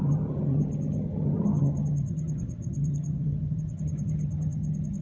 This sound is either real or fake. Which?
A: fake